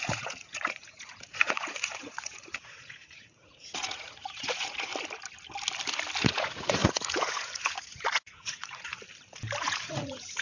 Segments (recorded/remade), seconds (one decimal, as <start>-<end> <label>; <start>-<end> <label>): 0.0-4.9 remade; 4.9-6.2 recorded; 6.2-8.9 remade; 8.9-9.6 recorded; 9.6-10.4 remade